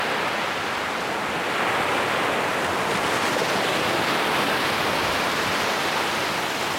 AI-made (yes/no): no